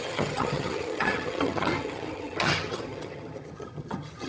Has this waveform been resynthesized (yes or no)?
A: yes